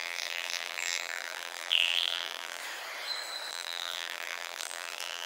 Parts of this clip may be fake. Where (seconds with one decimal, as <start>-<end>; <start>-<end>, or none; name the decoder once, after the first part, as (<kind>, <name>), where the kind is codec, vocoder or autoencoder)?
0.0-2.6 (vocoder, BigVGAN v2); 3.5-5.3